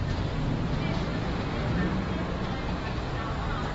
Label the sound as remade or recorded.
recorded